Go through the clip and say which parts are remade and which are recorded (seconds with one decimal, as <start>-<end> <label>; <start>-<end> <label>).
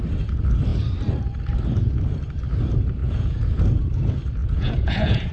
0.0-3.0 recorded; 3.0-3.6 remade; 3.6-4.4 recorded; 4.4-5.3 remade